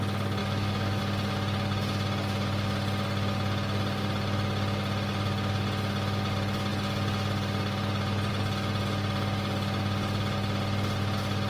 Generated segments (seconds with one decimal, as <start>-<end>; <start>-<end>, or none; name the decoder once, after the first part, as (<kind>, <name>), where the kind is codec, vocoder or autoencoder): 0.4-1.0 (autoencoder, DAC-VAE)